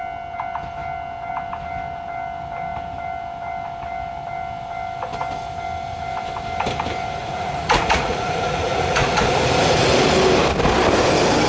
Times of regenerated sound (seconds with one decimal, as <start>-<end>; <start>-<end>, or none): 7.2-9.2